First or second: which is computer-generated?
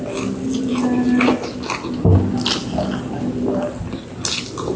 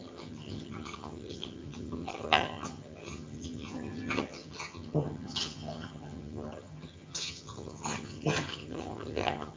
second